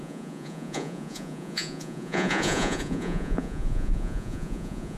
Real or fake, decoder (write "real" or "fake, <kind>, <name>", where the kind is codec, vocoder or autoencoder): fake, vocoder, Vocos